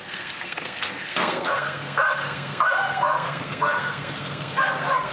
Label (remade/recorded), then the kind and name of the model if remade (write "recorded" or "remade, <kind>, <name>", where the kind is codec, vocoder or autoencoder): remade, codec, SNAC